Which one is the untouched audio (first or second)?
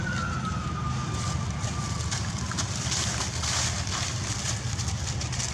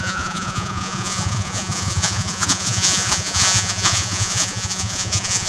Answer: first